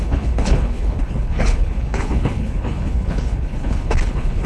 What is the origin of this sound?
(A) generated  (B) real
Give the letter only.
A